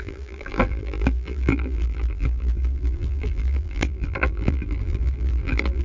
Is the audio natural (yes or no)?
no